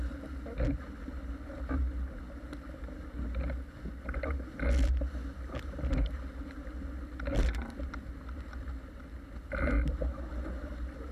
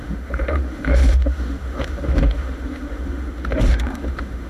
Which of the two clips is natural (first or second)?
first